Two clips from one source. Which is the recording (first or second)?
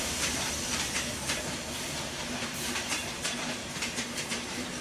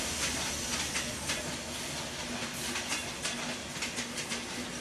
second